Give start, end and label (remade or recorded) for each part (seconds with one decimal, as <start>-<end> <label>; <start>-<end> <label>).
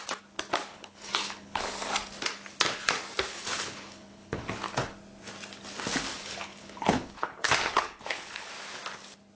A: 0.0-0.7 recorded; 0.7-1.6 remade; 1.6-3.3 recorded; 3.3-4.5 remade; 4.5-6.1 recorded; 6.1-8.5 remade; 8.5-9.3 recorded